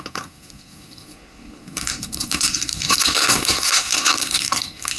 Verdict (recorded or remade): remade